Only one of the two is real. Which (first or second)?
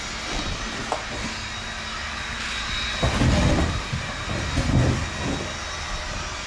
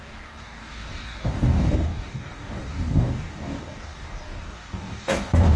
first